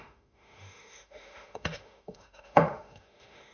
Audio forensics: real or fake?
fake